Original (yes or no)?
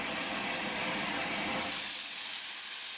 yes